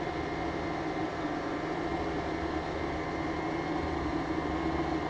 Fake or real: fake